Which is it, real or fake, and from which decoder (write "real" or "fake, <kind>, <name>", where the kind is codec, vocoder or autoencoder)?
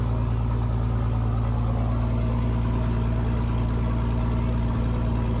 real